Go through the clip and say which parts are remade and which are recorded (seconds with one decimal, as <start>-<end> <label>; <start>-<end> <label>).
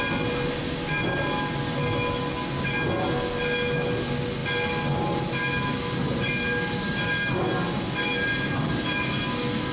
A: 0.0-9.7 recorded